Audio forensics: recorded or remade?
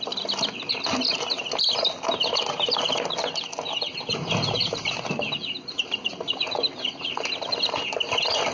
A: recorded